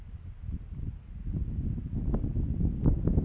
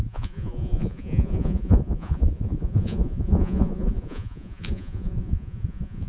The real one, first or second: first